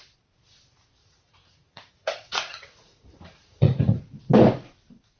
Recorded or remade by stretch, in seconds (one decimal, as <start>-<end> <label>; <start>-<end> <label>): 0.0-1.0 recorded; 1.0-4.1 remade; 4.1-5.2 recorded